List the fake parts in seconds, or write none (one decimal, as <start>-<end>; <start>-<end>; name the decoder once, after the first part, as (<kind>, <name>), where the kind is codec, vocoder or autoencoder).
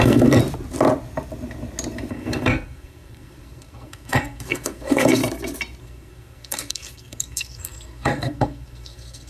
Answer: 0.0-0.4 (codec, SNAC); 2.1-5.2; 5.8-9.3